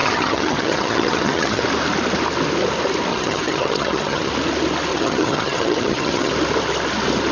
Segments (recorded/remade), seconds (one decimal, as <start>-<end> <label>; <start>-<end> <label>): 0.0-1.6 remade; 1.6-3.1 recorded; 3.1-4.3 remade; 4.3-4.9 recorded; 4.9-6.3 remade; 6.3-7.3 recorded